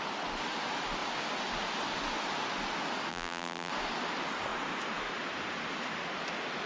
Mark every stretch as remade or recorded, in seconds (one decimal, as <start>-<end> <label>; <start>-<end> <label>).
0.0-3.1 recorded; 3.1-3.7 remade; 3.7-6.7 recorded